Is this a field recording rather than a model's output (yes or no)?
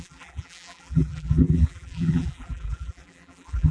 no